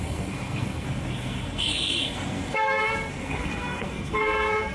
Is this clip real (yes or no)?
no